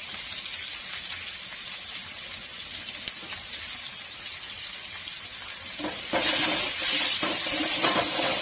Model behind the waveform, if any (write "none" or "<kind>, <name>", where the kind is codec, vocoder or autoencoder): none